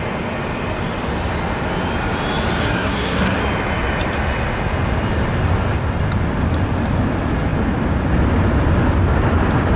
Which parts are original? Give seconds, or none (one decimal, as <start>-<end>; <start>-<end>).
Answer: 0.0-2.6; 3.4-9.8